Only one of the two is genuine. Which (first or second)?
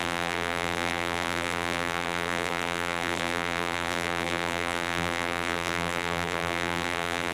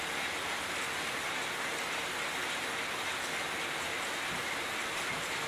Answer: second